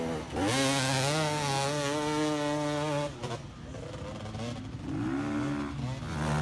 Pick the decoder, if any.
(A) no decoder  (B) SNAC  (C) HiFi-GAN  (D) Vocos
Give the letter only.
A